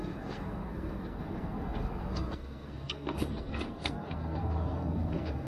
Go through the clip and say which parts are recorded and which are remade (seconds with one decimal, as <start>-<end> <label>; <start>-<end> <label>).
0.0-5.5 remade